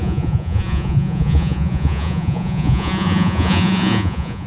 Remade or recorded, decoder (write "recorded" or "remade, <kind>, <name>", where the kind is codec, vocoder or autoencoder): remade, vocoder, Vocos